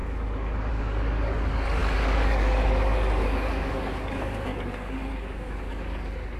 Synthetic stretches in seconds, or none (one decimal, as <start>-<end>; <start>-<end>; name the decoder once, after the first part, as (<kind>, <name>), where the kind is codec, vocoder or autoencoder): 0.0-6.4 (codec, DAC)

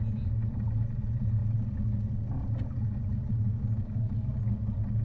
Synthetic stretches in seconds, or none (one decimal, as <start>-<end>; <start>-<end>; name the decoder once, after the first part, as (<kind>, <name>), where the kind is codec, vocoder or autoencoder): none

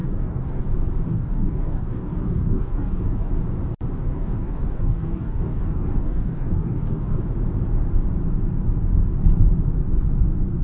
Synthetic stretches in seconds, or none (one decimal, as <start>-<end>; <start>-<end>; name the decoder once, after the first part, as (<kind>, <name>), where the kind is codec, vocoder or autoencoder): 0.0-0.6 (codec, DAC); 1.1-3.3; 4.0-7.2

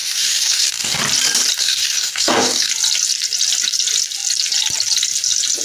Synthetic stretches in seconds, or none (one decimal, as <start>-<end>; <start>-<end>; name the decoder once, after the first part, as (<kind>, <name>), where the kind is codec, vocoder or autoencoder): 0.0-1.0 (codec, DAC); 1.6-2.7

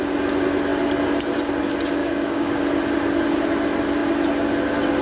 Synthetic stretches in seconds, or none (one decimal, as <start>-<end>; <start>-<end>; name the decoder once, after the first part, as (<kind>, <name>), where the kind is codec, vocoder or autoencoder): 2.0-2.6 (codec, DAC)

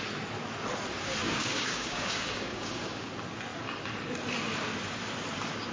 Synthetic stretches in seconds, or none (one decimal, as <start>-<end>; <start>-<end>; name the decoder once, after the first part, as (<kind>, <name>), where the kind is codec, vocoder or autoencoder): 1.2-3.1 (codec, DAC)

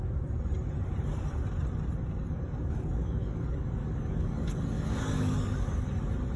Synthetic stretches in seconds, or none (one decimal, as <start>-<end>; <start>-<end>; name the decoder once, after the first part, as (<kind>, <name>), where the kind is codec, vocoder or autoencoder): 2.2-6.0 (codec, DAC)

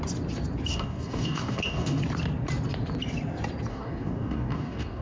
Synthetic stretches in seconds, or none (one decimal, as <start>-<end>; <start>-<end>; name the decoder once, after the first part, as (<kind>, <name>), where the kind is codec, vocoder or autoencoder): 0.7-2.0 (codec, DAC); 3.7-5.0